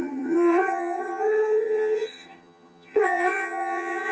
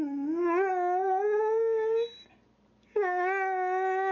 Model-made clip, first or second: first